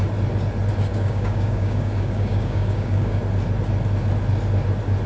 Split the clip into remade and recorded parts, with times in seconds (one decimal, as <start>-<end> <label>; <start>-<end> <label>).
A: 0.0-0.9 recorded; 0.9-3.2 remade; 3.2-5.1 recorded